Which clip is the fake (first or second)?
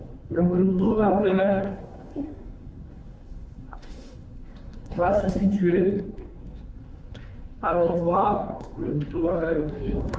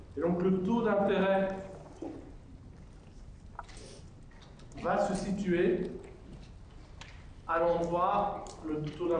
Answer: first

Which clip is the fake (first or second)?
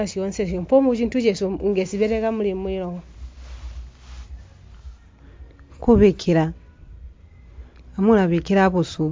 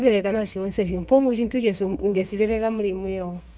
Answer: second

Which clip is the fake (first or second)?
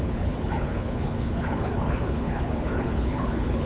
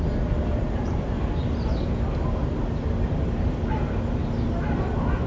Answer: first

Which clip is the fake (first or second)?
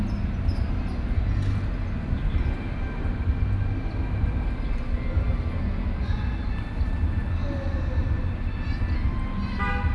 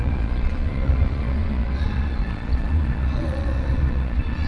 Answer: second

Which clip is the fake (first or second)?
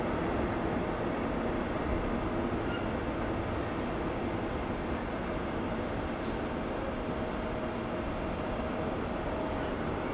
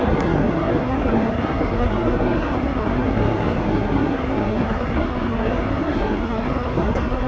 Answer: second